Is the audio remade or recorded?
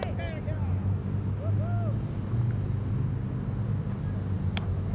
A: recorded